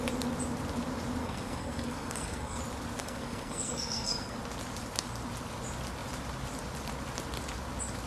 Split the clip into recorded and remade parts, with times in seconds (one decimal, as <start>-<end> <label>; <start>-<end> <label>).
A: 0.0-1.2 recorded; 1.2-2.6 remade; 2.6-3.0 recorded; 3.0-4.4 remade; 4.4-8.1 recorded